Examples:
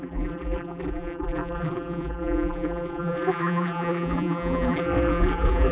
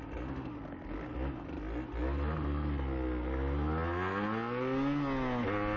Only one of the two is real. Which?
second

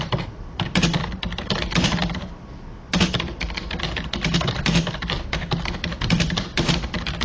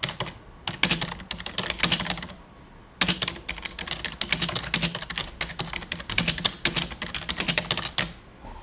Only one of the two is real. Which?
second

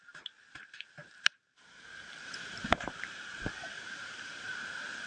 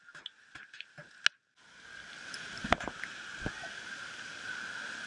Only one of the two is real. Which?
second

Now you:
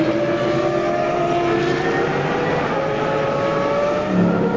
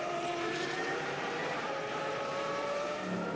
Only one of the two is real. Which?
first